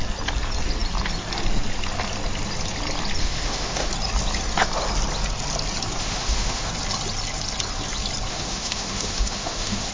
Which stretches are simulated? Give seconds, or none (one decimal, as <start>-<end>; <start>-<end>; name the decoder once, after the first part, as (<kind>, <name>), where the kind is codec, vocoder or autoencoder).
3.2-3.9 (autoencoder, DAC-VAE); 6.0-6.7; 8.3-9.9